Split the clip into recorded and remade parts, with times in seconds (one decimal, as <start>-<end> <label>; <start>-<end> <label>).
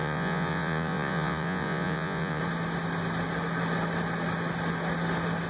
0.0-2.4 remade; 2.4-5.5 recorded